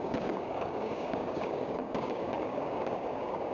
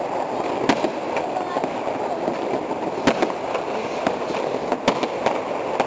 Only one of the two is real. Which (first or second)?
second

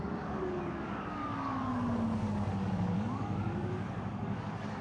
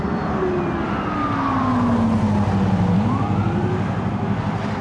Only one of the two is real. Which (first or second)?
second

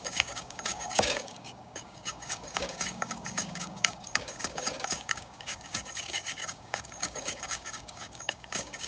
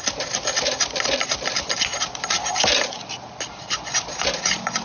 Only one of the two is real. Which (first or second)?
second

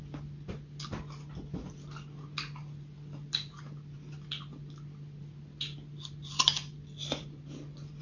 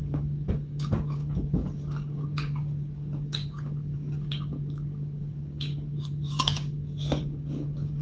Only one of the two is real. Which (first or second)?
first